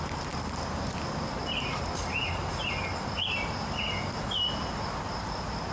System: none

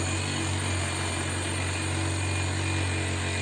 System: none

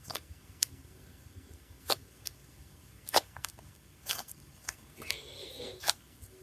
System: codec, SNAC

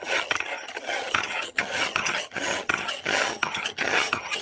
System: vocoder, HiFi-GAN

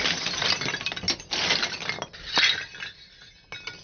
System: none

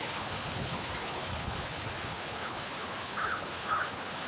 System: codec, HILCodec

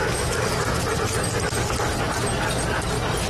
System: none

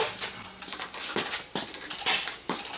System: none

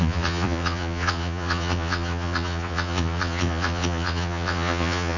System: vocoder, Vocos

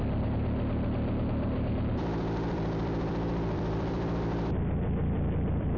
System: vocoder, BigVGAN v2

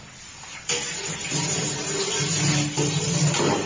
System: none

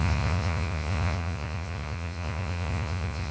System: vocoder, Vocos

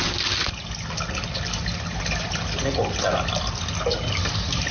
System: none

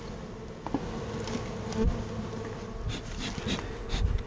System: none